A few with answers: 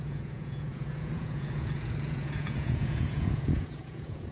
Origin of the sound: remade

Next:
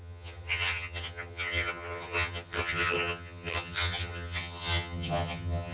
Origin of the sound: remade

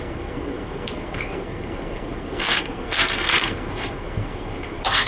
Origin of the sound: remade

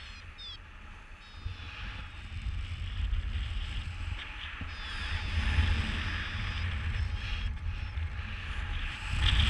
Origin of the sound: recorded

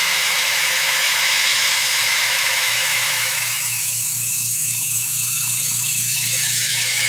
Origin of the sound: remade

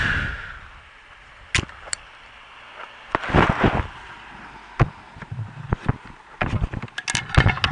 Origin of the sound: recorded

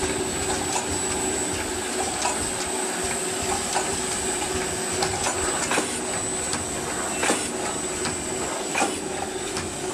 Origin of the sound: recorded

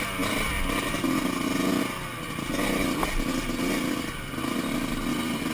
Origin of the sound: recorded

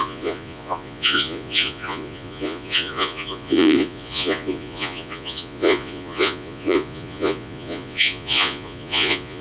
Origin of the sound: remade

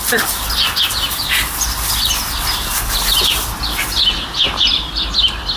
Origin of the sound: recorded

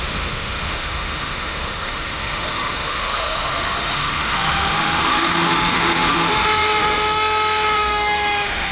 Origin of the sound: remade